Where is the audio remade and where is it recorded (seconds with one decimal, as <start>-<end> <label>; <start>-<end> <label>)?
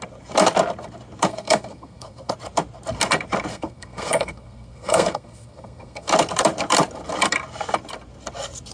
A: 0.0-1.3 recorded; 1.3-2.3 remade; 2.3-3.5 recorded; 3.5-6.1 remade; 6.1-8.7 recorded